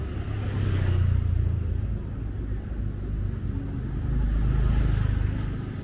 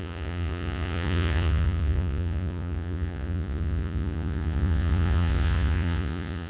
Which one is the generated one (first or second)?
second